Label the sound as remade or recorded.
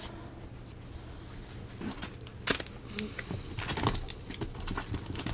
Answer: recorded